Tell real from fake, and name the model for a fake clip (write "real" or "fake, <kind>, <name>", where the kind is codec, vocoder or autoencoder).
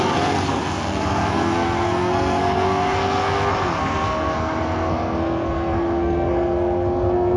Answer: fake, codec, SNAC